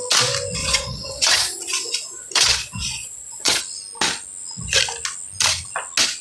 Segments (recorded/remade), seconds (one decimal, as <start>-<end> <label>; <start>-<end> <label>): 0.0-0.6 recorded; 0.6-3.6 remade; 3.6-6.2 recorded

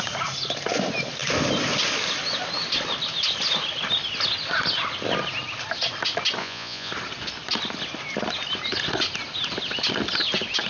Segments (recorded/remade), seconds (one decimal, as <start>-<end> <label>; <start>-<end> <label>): 0.0-6.4 recorded; 6.4-6.9 remade; 6.9-10.7 recorded

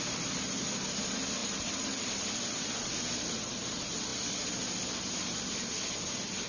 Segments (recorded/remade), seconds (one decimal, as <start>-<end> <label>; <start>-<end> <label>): 0.0-6.5 recorded

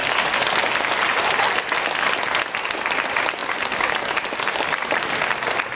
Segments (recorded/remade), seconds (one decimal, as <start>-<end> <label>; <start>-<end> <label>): 0.0-5.7 recorded